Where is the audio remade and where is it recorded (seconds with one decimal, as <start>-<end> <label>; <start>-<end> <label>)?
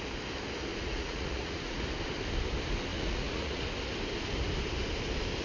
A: 0.0-0.7 recorded; 0.7-1.9 remade; 1.9-2.9 recorded; 2.9-3.6 remade; 3.6-5.4 recorded